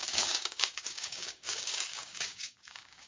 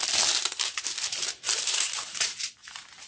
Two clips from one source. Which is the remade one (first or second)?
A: first